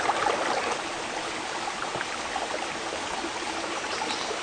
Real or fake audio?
real